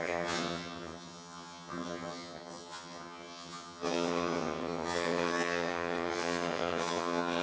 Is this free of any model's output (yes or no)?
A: no